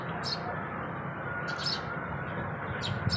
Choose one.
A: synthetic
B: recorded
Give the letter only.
B